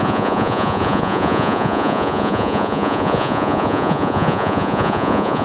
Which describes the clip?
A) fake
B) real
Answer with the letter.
A